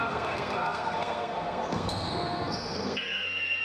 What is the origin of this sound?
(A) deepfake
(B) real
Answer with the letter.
A